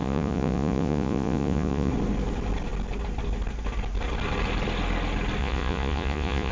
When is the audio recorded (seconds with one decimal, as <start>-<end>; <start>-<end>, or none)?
1.9-5.4